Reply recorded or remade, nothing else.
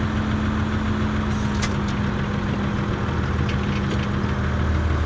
recorded